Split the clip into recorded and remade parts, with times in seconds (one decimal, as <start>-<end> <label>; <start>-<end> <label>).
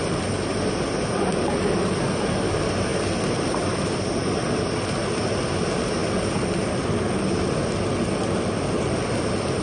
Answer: 0.0-9.6 recorded